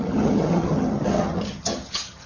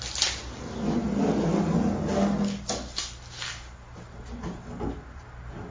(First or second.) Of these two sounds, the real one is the second